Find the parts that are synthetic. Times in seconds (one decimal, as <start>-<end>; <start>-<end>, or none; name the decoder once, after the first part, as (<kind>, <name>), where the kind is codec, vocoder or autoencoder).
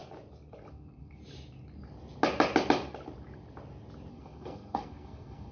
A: 0.7-1.2 (codec, SNAC); 4.1-5.5